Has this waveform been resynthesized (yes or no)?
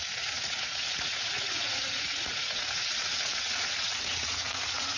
yes